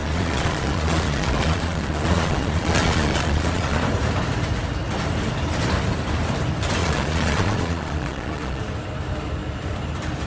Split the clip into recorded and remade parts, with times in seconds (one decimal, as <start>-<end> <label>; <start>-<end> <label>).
0.0-3.8 remade; 3.8-6.8 recorded; 6.8-8.6 remade; 8.6-10.3 recorded